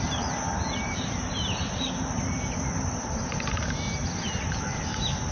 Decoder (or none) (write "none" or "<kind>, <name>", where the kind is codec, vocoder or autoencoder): vocoder, BigVGAN v2